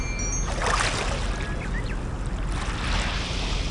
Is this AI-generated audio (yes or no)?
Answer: no